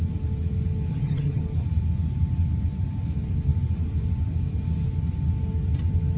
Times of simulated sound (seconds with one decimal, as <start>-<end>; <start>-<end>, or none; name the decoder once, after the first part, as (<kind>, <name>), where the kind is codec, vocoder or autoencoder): 0.9-1.4 (vocoder, HiFi-GAN)